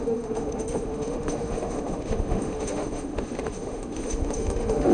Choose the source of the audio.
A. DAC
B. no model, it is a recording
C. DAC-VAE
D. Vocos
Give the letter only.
C